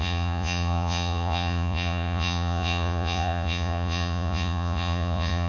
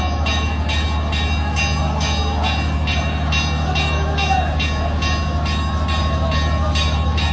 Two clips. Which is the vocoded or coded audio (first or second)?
first